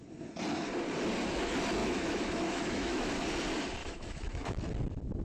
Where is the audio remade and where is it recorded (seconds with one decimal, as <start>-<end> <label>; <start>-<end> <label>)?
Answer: 0.0-1.8 recorded; 1.8-3.1 remade; 3.1-3.8 recorded; 3.8-4.6 remade; 4.6-5.2 recorded